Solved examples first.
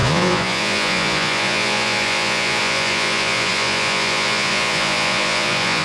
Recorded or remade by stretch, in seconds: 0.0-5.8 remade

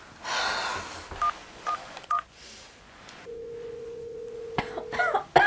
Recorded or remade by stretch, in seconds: 0.0-1.4 recorded; 1.4-4.6 remade; 4.6-5.5 recorded

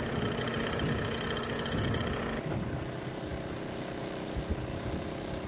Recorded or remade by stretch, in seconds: 0.0-5.5 recorded

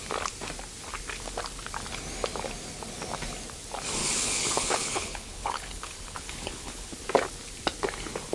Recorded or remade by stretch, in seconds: 0.0-4.0 recorded; 4.0-6.9 remade; 6.9-8.3 recorded